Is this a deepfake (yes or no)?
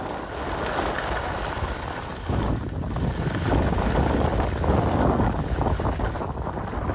no